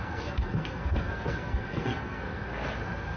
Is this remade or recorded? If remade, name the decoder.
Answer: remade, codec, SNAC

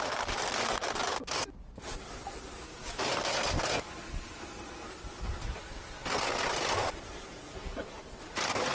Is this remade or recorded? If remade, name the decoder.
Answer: recorded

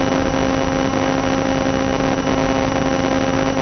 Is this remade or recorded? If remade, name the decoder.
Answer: recorded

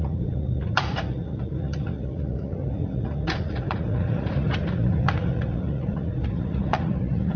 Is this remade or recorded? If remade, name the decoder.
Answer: remade, vocoder, Vocos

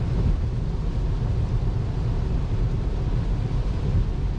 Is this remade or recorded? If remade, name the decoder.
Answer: recorded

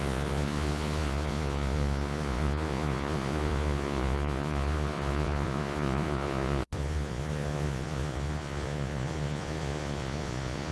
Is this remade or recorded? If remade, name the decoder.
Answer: remade, vocoder, Vocos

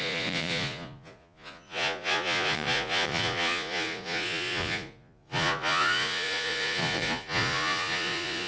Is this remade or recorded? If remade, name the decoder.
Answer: remade, vocoder, Vocos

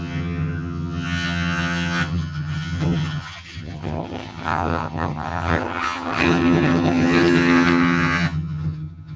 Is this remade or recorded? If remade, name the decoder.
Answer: remade, vocoder, HiFi-GAN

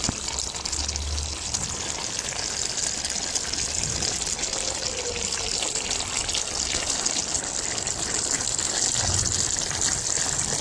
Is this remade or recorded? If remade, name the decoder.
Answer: recorded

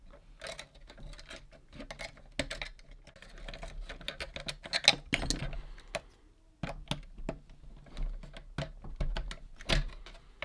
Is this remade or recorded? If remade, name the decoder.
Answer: recorded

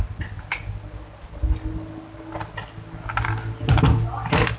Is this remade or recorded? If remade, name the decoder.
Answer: recorded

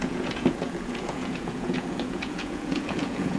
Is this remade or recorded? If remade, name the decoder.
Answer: remade, vocoder, Vocos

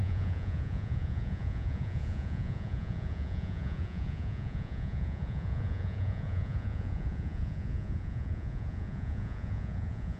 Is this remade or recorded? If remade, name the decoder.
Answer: remade, vocoder, Vocos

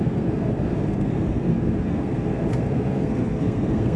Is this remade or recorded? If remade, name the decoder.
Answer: remade, codec, SNAC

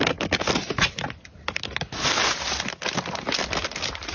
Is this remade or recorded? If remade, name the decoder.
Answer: recorded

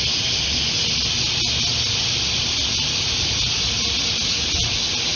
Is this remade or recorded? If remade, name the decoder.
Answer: recorded